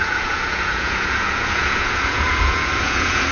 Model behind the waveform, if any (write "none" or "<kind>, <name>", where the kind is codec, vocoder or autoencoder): vocoder, Vocos